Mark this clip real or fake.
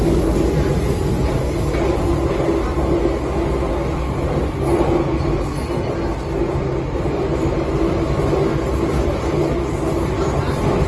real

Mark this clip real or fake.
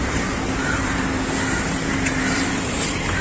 fake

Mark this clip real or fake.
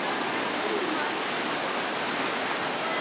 real